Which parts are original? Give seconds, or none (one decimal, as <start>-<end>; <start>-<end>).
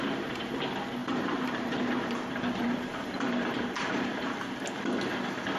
0.0-1.0; 4.4-5.6